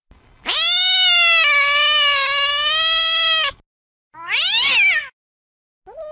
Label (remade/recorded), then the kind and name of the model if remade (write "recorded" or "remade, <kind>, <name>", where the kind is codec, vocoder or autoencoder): recorded